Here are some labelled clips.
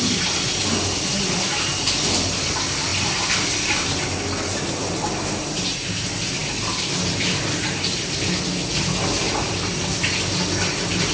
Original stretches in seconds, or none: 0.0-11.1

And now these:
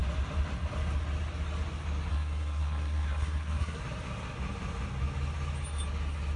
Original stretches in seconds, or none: 0.0-2.1; 3.8-6.4

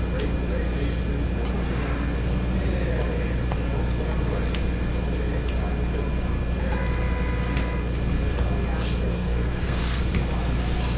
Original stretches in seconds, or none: 0.0-9.1; 10.0-11.0

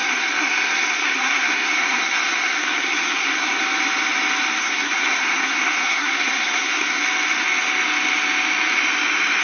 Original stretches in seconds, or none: 3.6-4.6; 7.0-9.4

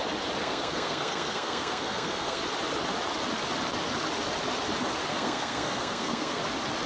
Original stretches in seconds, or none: 0.0-0.4; 2.4-5.1; 6.4-6.9

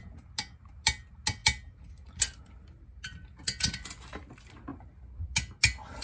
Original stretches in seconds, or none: 0.0-6.0

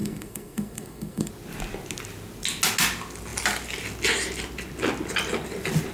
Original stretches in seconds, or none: 1.3-5.9